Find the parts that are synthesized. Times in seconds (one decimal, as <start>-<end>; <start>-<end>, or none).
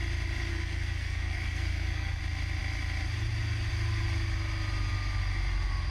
0.5-2.2